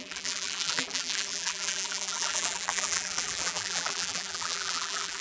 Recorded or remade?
remade